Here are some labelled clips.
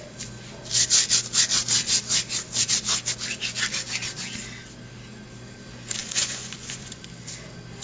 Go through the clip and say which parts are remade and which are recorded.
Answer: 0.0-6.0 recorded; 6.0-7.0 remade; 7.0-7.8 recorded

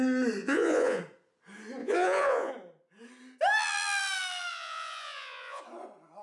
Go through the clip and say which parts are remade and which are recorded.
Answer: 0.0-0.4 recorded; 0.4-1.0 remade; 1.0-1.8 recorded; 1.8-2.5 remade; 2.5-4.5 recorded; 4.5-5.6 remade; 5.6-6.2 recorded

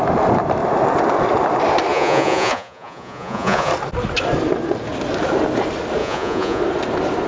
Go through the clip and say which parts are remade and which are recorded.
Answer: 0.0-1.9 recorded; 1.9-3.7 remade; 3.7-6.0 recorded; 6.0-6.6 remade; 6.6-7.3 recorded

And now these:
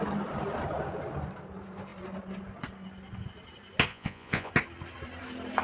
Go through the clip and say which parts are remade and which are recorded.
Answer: 0.0-3.9 recorded; 3.9-4.5 remade; 4.5-5.6 recorded

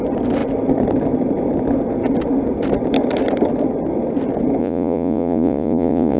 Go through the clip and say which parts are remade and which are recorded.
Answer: 0.0-4.6 recorded; 4.6-6.2 remade